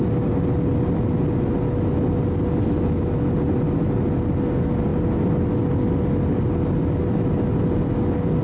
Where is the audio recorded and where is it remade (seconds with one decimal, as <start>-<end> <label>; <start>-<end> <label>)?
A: 0.0-8.4 recorded